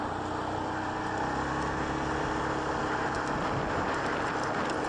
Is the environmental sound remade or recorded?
recorded